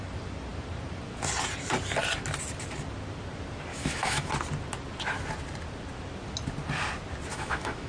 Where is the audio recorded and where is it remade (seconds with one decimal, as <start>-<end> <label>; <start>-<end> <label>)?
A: 0.0-3.7 recorded; 3.7-4.3 remade; 4.3-7.3 recorded; 7.3-7.9 remade